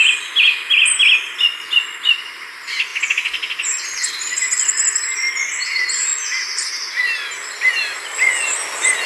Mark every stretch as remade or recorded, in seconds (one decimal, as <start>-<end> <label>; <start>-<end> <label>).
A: 0.0-9.1 recorded